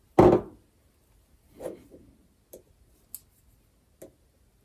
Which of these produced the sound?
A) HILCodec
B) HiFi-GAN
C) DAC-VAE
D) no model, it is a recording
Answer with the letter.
D